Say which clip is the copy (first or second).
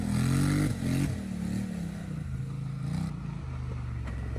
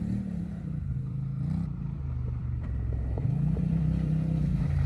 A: second